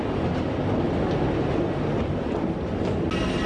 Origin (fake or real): real